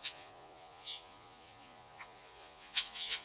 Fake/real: fake